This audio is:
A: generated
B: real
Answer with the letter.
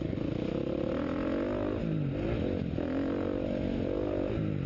B